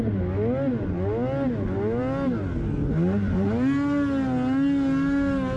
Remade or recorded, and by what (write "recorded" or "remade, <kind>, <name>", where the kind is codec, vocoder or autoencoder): recorded